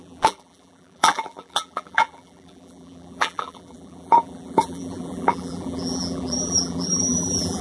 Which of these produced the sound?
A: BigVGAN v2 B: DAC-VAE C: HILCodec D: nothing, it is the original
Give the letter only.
A